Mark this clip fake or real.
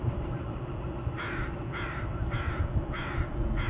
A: real